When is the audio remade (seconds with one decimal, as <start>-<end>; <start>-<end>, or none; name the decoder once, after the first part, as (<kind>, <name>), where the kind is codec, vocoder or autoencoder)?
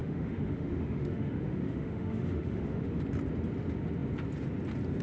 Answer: 0.0-3.0 (autoencoder, DAC-VAE)